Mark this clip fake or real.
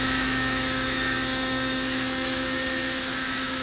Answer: fake